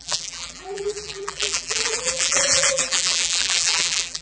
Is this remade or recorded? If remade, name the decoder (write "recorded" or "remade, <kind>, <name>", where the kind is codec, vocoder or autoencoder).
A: remade, vocoder, BigVGAN v2